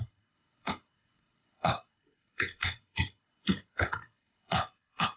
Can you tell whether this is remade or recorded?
remade